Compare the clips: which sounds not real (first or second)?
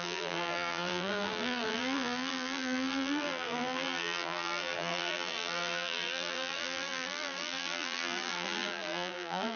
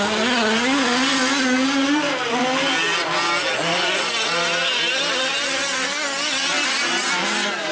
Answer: first